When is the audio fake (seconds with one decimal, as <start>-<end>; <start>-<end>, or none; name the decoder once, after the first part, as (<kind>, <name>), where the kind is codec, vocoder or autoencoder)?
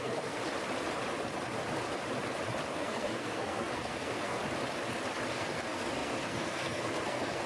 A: 0.0-0.4 (codec, SNAC); 2.7-4.4; 5.3-7.5